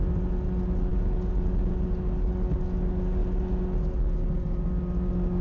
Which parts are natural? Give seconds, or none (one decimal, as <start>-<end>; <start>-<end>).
0.0-5.4